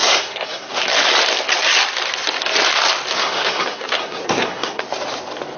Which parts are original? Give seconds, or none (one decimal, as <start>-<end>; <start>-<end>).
0.7-3.2; 4.8-5.6